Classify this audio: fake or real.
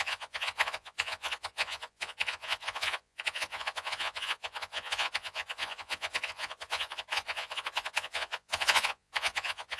fake